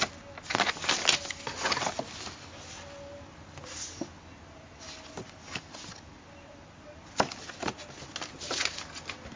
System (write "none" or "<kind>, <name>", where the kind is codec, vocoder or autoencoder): none